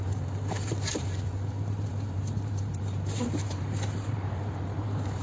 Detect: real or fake fake